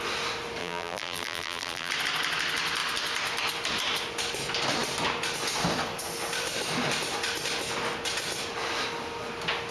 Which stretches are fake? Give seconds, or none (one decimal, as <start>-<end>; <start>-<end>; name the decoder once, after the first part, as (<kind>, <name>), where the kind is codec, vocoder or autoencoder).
0.6-1.9 (vocoder, BigVGAN v2)